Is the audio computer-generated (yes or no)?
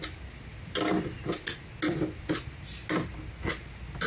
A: no